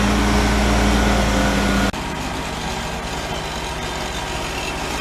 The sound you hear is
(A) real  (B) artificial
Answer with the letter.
A